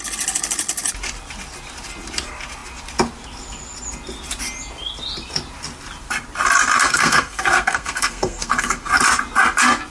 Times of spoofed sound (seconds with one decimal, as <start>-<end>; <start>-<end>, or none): 6.8-8.9

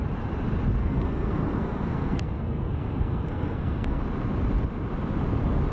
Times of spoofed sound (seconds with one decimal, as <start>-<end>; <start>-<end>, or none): 0.8-4.0

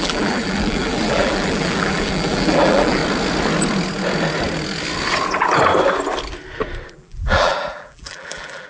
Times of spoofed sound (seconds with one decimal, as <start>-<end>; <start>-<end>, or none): 0.0-3.0; 6.9-8.7

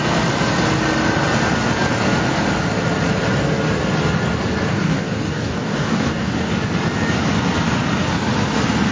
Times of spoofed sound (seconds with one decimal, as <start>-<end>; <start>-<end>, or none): 4.7-6.5

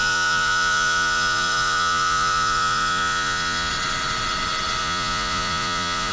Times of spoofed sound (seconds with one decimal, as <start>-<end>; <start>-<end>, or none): 0.0-3.7; 4.8-6.1

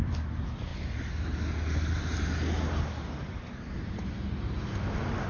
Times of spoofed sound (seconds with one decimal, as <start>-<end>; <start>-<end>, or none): none

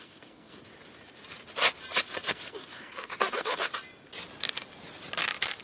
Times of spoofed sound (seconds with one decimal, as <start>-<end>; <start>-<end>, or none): 0.0-0.7; 2.3-3.7